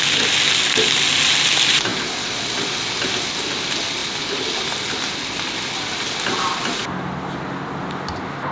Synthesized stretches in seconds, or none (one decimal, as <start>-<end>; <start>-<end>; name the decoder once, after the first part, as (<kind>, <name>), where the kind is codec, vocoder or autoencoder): none